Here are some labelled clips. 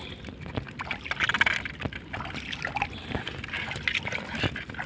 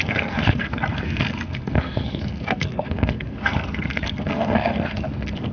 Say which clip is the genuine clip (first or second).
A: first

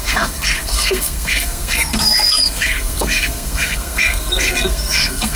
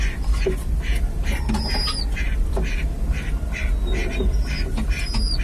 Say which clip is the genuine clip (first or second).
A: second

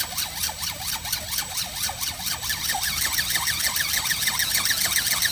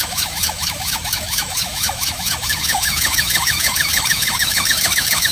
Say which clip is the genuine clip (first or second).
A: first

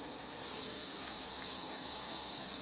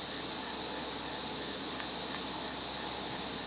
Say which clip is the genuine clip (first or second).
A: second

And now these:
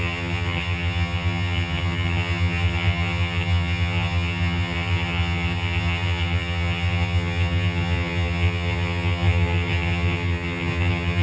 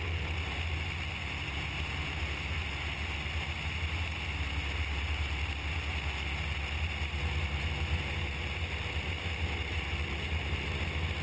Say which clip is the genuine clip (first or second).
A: second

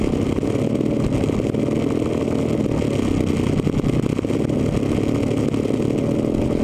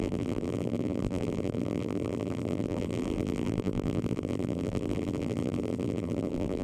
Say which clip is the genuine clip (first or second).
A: first